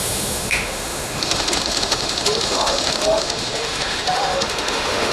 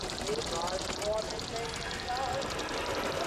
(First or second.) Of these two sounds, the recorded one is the second